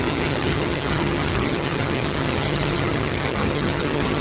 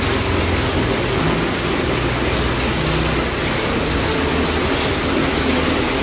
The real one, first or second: second